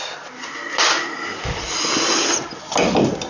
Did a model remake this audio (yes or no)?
no